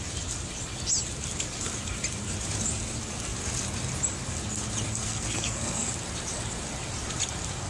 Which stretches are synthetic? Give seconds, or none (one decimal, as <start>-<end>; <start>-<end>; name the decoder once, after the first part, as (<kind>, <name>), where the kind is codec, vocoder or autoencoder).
4.9-5.9 (codec, SNAC)